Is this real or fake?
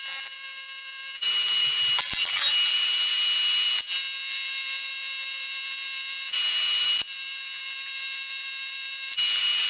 fake